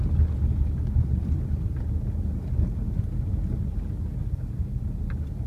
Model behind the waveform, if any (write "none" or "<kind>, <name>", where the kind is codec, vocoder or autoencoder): none